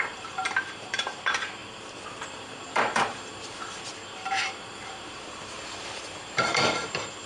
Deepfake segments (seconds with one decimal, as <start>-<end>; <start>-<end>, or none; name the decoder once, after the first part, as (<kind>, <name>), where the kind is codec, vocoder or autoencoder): 0.0-7.3 (vocoder, BigVGAN v2)